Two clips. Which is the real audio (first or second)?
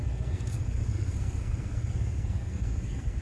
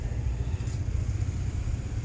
second